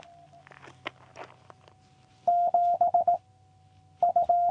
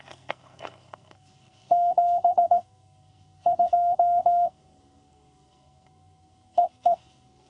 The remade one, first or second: second